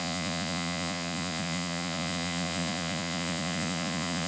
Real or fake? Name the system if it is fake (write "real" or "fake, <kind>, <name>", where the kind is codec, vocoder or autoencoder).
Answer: fake, vocoder, Vocos